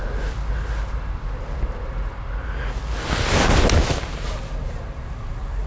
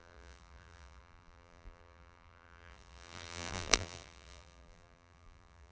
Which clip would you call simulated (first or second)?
second